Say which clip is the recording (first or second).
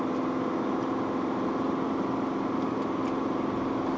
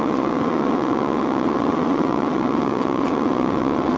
first